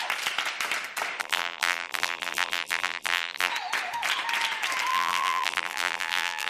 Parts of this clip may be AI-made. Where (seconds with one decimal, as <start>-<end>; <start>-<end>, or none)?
1.2-3.5; 4.9-6.5